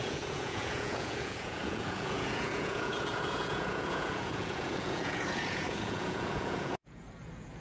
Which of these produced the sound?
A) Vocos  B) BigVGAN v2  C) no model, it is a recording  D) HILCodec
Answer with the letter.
A